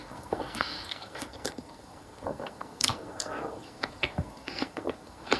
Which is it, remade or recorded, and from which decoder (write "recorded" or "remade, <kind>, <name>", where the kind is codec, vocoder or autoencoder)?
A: remade, codec, SNAC